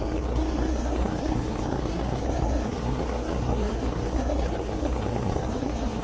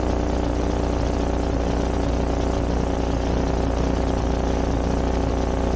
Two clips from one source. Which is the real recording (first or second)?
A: second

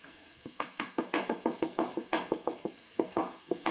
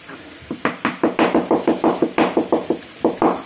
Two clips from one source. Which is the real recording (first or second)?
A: second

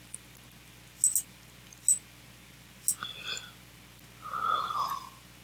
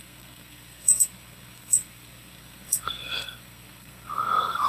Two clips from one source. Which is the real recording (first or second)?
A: first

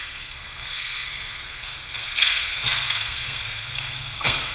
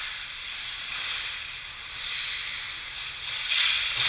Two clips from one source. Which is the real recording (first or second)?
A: second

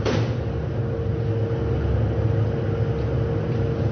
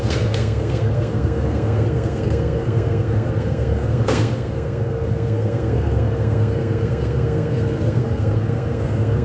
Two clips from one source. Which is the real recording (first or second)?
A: first